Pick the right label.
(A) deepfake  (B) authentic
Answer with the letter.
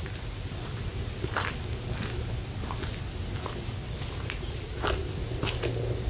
B